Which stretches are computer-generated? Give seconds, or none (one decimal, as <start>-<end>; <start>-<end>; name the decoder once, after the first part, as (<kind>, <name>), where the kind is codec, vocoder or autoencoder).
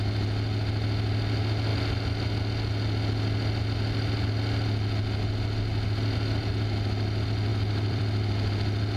7.5-8.5 (vocoder, BigVGAN v2)